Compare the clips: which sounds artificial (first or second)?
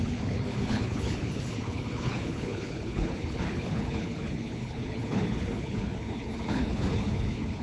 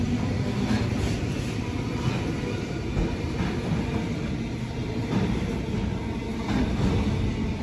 first